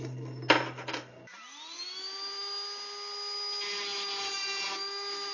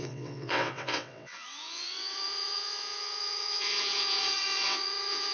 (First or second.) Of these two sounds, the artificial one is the second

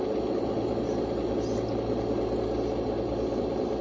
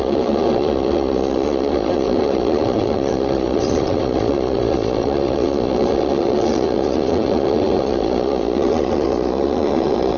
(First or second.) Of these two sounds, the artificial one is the second